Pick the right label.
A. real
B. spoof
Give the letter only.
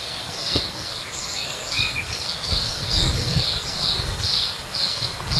B